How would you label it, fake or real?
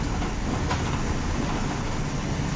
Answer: real